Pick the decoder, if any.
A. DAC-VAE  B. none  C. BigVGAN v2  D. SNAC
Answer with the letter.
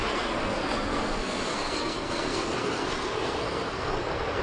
D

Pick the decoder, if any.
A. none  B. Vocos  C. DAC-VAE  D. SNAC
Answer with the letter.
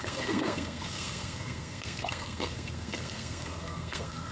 D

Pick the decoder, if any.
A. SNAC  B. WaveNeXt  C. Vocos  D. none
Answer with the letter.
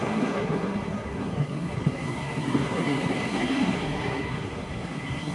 A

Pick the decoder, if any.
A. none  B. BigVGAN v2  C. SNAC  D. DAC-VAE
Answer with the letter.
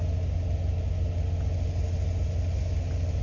A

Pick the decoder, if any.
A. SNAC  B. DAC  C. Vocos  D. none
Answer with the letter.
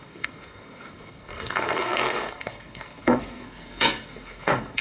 A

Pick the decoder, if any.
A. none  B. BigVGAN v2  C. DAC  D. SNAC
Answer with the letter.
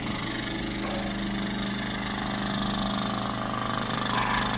A